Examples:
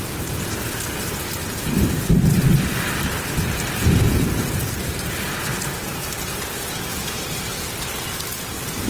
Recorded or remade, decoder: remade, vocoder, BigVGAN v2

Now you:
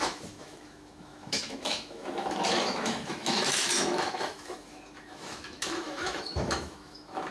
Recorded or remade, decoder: remade, autoencoder, DAC-VAE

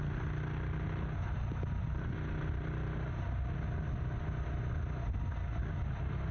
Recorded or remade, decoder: recorded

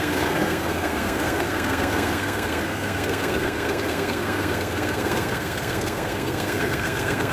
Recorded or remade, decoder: remade, codec, SNAC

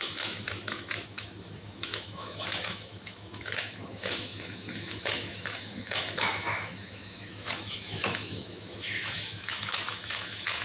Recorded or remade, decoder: remade, autoencoder, DAC-VAE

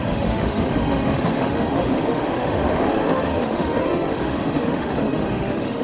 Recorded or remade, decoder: remade, autoencoder, DAC-VAE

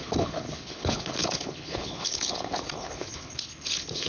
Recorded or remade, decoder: remade, codec, HILCodec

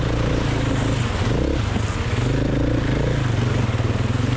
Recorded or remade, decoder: recorded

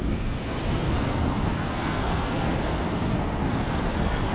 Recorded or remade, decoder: remade, codec, SNAC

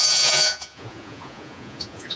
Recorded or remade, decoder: remade, vocoder, Vocos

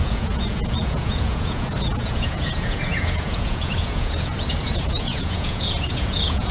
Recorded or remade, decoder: remade, vocoder, Vocos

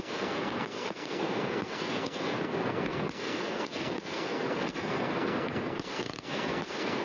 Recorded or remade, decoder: remade, codec, SNAC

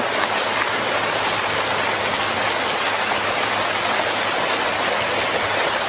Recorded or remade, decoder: recorded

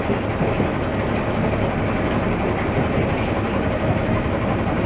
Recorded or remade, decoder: recorded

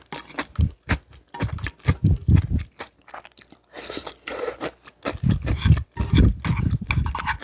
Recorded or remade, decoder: recorded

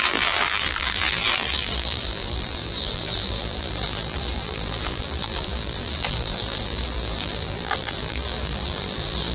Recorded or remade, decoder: remade, vocoder, BigVGAN v2